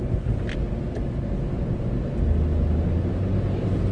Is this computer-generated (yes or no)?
no